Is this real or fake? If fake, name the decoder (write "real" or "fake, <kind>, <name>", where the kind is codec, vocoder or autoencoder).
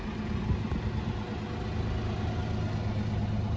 real